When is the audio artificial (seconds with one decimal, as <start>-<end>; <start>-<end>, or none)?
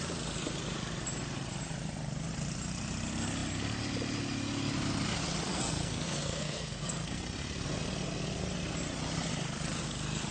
5.5-7.2